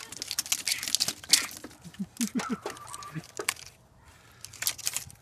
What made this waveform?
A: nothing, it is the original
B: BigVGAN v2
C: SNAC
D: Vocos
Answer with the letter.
A